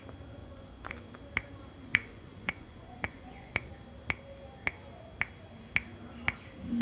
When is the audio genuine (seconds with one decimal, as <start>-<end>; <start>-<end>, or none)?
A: 0.0-0.4; 0.9-1.9; 3.7-6.8